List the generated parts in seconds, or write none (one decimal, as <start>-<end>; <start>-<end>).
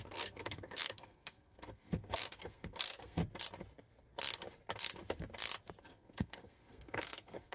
0.0-3.2; 5.8-7.5